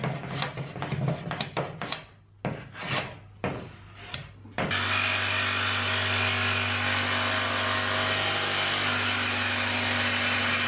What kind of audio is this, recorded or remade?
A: recorded